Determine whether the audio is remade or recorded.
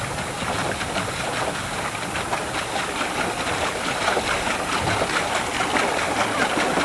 recorded